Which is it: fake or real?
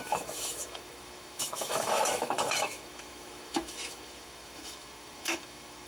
fake